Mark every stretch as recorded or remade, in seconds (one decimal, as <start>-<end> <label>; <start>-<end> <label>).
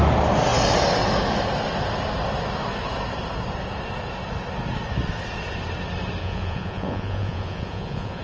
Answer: 0.0-6.2 recorded; 6.2-8.2 remade